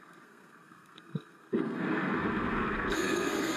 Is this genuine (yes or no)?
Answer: no